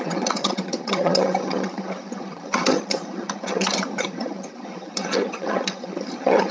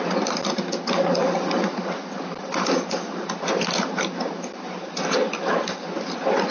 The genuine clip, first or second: second